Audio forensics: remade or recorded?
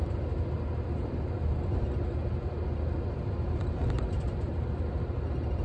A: recorded